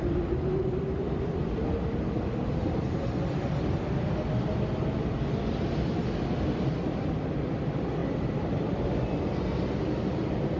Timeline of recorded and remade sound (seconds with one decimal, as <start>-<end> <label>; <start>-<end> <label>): 0.0-8.0 recorded; 8.0-8.9 remade; 8.9-10.6 recorded